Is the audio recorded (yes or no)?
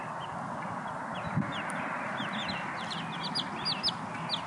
yes